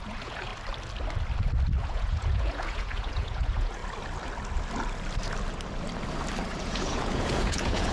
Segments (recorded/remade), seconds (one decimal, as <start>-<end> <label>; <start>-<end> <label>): 0.0-0.5 remade; 0.5-1.8 recorded; 1.8-3.8 remade; 3.8-6.6 recorded; 6.6-7.9 remade